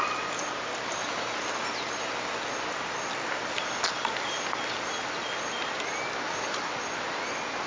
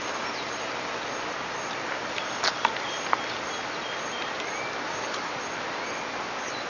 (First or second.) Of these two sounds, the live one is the first